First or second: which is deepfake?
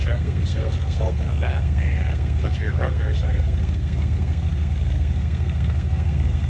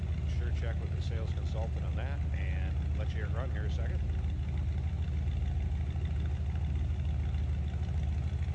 first